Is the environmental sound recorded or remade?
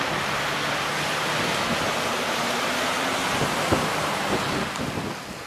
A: recorded